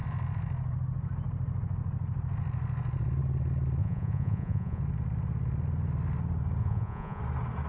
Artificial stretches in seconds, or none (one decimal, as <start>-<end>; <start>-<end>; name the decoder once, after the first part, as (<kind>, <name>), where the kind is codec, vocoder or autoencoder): 3.8-4.8 (vocoder, Vocos); 6.6-7.2